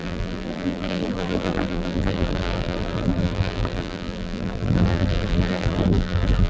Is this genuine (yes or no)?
no